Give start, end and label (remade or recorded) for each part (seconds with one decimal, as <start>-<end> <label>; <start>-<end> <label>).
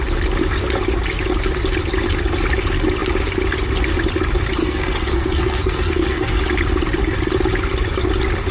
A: 0.0-4.6 recorded; 4.6-6.4 remade; 6.4-8.5 recorded